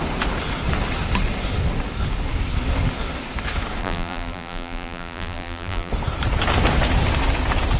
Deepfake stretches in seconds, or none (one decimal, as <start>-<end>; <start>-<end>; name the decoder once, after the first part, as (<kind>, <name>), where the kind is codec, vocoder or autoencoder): 3.8-5.9 (vocoder, BigVGAN v2)